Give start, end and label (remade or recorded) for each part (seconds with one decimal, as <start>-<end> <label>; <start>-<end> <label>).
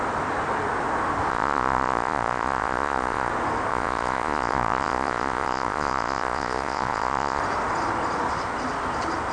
0.0-1.3 recorded; 1.3-3.3 remade; 3.3-3.7 recorded; 3.7-7.4 remade; 7.4-9.3 recorded